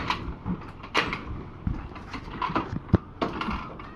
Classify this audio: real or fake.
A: real